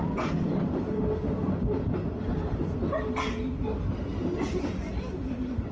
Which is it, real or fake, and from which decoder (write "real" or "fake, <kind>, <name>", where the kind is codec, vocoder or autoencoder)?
real